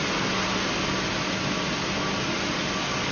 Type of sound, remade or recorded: recorded